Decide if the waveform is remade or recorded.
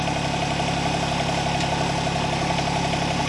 recorded